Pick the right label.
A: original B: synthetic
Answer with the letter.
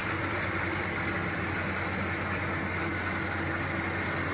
A